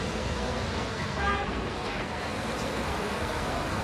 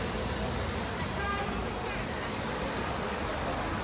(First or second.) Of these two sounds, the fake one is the first